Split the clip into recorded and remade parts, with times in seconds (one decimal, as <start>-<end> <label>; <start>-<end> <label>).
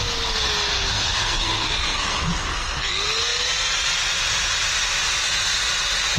0.0-0.7 recorded; 0.7-2.9 remade; 2.9-6.2 recorded